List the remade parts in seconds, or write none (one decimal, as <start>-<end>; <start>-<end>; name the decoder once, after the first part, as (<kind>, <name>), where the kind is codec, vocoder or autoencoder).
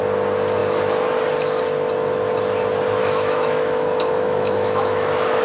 3.0-5.4 (autoencoder, DAC-VAE)